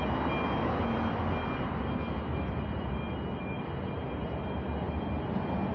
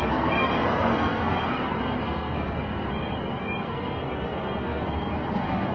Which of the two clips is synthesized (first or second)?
second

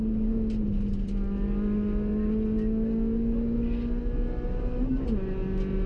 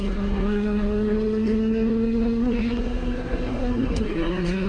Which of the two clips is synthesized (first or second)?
second